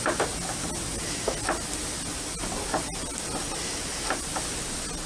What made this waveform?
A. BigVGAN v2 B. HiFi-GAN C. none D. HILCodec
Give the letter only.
C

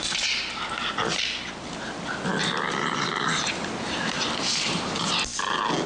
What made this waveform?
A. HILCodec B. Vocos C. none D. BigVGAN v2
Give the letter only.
C